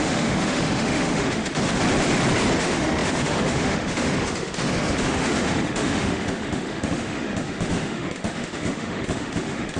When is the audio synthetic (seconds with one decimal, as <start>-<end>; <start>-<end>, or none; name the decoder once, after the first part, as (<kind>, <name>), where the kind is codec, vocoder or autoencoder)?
0.0-1.8 (autoencoder, DAC-VAE); 2.6-9.8

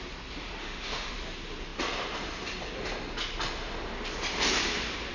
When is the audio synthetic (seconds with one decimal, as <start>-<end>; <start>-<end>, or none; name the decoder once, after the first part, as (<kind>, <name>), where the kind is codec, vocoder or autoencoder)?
0.6-1.1 (autoencoder, DAC-VAE)

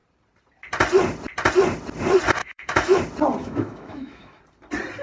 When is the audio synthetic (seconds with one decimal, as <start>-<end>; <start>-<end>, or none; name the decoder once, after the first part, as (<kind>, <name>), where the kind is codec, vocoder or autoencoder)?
2.4-3.0 (autoencoder, DAC-VAE); 3.4-4.4

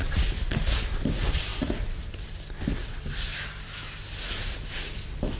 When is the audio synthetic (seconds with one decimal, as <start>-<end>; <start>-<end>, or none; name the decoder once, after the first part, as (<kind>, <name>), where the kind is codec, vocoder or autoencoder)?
none

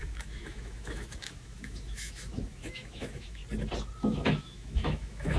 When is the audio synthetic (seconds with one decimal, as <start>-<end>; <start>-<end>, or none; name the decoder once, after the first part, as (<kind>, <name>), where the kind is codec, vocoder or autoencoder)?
0.0-3.4 (autoencoder, DAC-VAE); 4.0-5.4

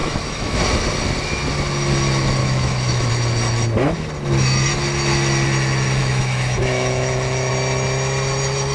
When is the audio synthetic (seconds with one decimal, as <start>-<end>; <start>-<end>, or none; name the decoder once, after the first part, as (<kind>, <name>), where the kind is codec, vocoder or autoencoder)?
0.0-0.6 (autoencoder, DAC-VAE); 2.4-3.1; 6.0-7.5

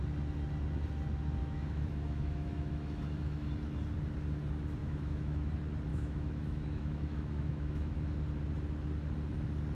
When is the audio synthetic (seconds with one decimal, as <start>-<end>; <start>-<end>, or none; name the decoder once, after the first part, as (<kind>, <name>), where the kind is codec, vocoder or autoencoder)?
1.4-3.5 (autoencoder, DAC-VAE); 4.8-5.5; 5.9-7.9

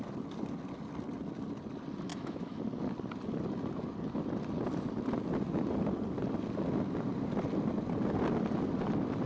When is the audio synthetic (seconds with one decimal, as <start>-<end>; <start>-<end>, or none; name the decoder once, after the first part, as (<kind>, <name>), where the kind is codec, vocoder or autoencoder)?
2.1-2.6 (autoencoder, DAC-VAE)